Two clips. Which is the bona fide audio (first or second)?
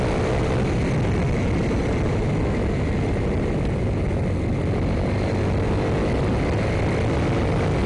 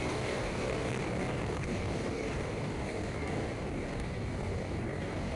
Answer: first